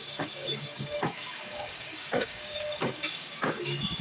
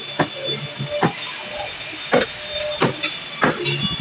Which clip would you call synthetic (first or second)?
first